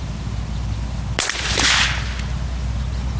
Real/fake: real